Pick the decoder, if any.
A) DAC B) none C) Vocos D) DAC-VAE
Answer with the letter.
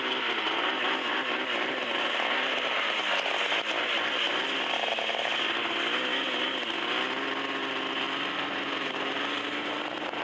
B